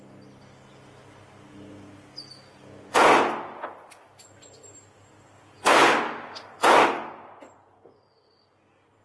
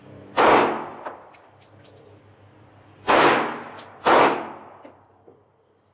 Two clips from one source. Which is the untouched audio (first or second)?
first